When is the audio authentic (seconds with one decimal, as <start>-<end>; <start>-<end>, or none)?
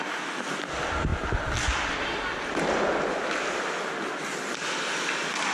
0.0-5.5